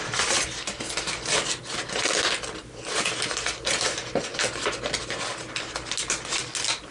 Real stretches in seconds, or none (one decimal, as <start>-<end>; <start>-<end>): 0.0-6.9